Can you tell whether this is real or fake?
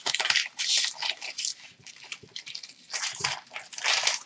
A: fake